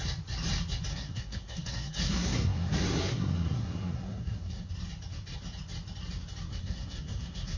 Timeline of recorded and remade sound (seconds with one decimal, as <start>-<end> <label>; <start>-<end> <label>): 0.0-0.9 recorded; 0.9-4.7 remade; 4.7-6.5 recorded; 6.5-7.6 remade

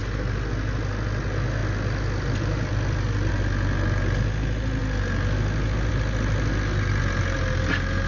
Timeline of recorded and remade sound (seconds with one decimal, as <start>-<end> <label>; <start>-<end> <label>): 0.0-1.6 recorded; 1.6-3.3 remade; 3.3-8.1 recorded

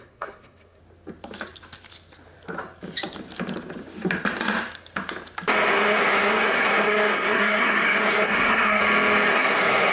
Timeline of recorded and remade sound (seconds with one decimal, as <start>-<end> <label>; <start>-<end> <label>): 0.0-0.8 remade; 0.8-5.7 recorded; 5.7-8.8 remade; 8.8-9.3 recorded; 9.3-9.9 remade